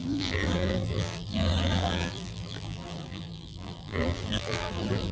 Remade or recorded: remade